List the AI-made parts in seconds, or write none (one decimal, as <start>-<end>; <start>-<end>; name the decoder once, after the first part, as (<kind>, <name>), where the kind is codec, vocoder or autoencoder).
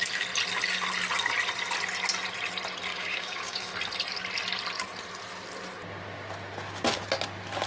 2.9-3.7 (codec, DAC)